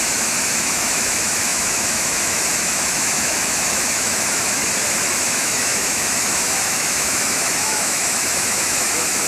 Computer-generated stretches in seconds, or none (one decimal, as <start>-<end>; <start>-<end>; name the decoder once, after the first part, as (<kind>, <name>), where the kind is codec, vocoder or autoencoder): 0.0-4.6 (autoencoder, DAC-VAE); 5.1-9.3